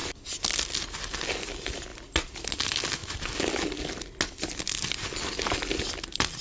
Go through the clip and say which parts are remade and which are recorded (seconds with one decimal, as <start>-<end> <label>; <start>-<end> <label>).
0.0-6.4 recorded